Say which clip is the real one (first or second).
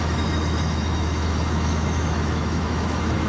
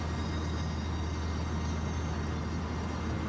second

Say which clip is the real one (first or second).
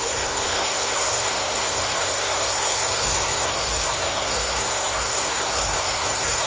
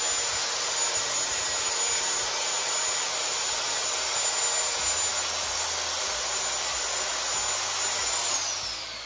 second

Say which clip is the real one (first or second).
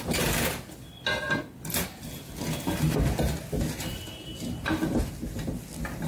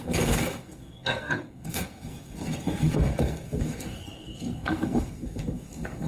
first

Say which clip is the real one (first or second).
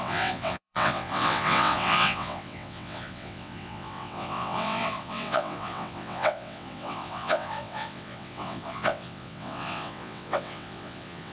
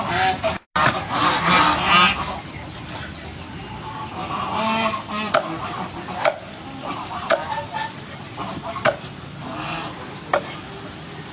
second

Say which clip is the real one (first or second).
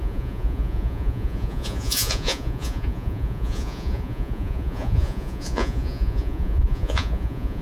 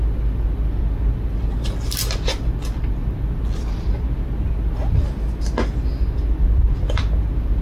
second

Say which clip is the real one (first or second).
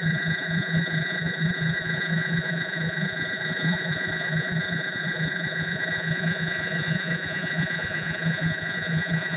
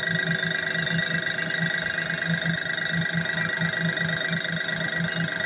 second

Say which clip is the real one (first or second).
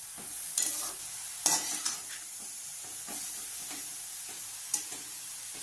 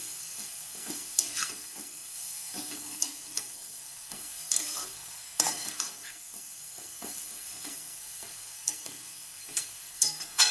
first